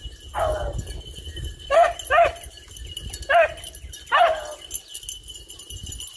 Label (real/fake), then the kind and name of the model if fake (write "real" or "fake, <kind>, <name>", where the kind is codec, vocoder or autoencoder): real